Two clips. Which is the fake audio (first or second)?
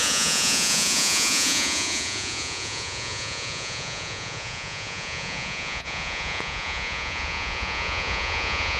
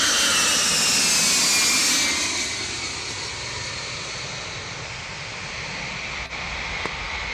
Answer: first